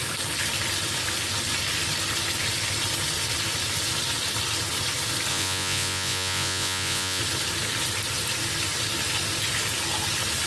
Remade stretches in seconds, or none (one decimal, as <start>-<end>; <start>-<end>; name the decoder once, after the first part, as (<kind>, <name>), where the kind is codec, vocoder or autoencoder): 5.3-7.2 (vocoder, Vocos)